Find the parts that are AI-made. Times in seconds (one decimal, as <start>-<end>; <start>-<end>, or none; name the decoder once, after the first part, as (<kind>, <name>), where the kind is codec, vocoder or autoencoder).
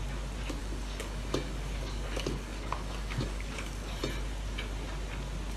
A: 0.6-4.0 (codec, DAC)